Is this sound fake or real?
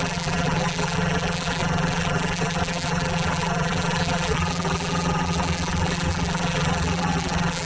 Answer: fake